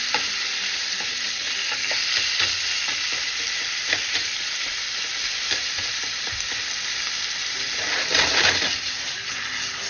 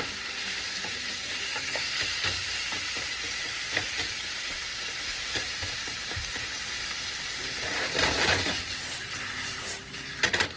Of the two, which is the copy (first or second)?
second